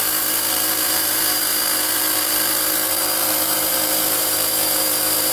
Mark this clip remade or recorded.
remade